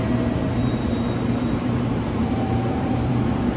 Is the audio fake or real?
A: fake